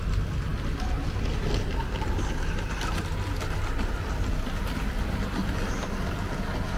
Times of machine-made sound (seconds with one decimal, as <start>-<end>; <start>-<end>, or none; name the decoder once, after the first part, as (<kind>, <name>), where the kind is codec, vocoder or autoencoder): none